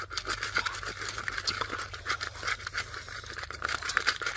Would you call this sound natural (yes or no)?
yes